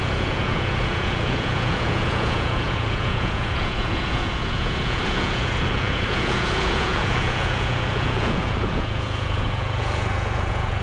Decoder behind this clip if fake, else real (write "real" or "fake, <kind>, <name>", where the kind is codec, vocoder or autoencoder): fake, vocoder, Vocos